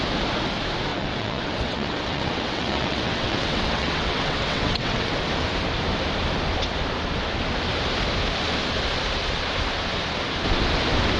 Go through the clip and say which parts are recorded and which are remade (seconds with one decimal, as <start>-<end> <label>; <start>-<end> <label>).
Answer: 0.0-0.9 recorded; 0.9-5.1 remade; 5.1-11.2 recorded